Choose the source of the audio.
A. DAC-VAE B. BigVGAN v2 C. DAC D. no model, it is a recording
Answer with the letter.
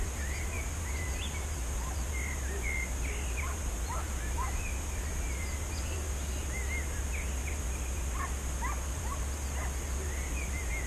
D